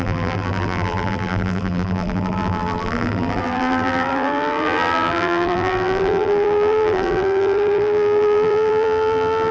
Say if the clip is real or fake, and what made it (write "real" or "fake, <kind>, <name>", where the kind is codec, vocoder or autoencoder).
fake, vocoder, BigVGAN v2